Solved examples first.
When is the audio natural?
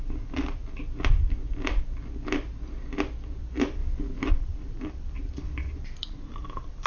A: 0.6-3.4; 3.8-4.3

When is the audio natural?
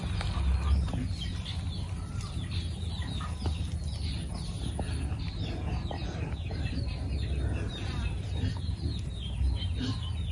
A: 0.0-7.7; 9.1-10.3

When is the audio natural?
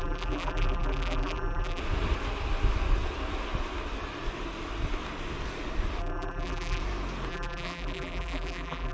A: 1.8-6.0; 6.8-7.3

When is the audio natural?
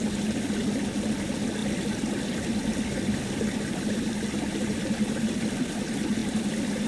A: 0.0-1.6; 5.7-6.2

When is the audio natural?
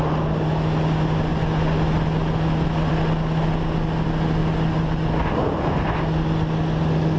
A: 0.0-7.2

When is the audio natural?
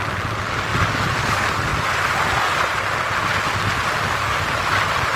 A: 0.0-5.2